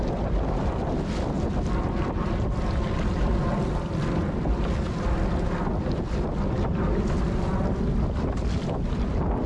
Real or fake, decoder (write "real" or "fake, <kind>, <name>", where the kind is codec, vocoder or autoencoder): real